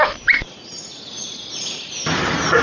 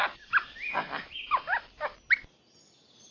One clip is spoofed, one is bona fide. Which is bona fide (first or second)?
second